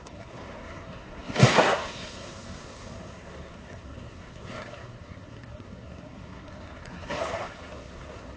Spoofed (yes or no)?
yes